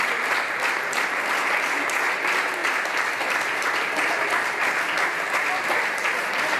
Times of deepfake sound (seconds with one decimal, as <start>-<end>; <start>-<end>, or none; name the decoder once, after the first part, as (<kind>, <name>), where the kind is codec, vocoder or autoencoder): none